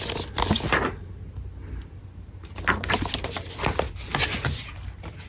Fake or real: real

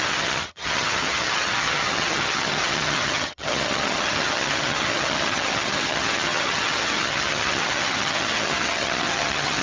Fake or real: fake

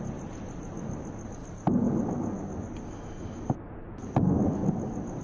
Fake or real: real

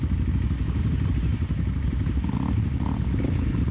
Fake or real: real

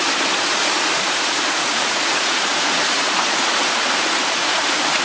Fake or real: fake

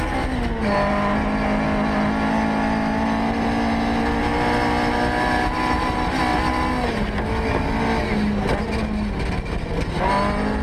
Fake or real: real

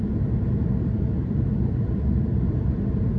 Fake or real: real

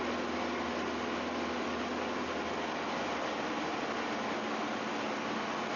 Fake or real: real